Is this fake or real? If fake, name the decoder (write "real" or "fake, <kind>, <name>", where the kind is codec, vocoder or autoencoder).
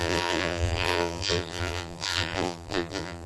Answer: fake, vocoder, BigVGAN v2